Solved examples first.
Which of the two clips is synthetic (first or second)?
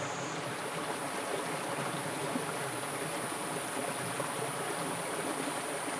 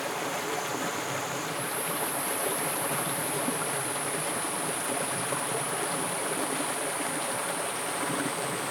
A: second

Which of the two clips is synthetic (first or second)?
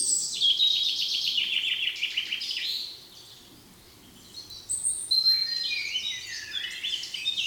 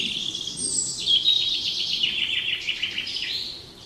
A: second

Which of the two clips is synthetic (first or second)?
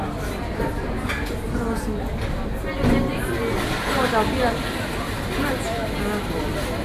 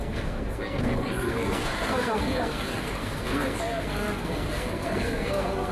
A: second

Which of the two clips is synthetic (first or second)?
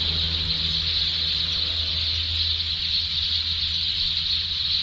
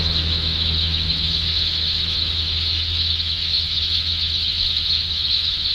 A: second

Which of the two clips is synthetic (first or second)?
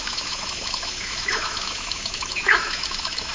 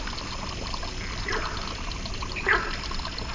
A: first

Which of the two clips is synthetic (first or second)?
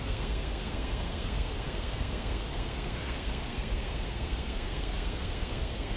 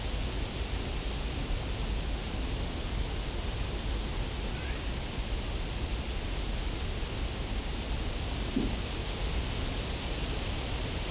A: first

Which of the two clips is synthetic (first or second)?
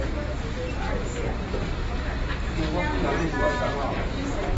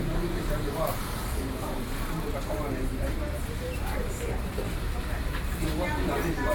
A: second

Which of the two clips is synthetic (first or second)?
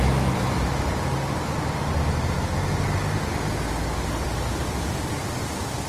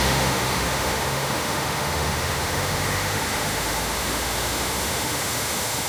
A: second